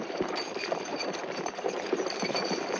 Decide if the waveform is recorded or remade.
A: remade